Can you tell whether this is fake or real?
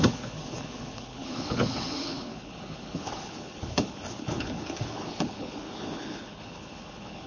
fake